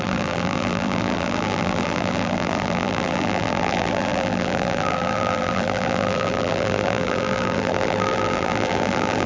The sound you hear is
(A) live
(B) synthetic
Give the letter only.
B